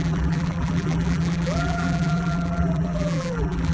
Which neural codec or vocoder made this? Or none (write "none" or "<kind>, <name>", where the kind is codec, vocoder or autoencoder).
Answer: vocoder, BigVGAN v2